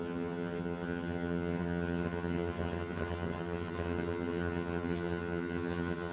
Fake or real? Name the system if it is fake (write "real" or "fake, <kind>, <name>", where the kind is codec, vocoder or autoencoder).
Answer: fake, vocoder, HiFi-GAN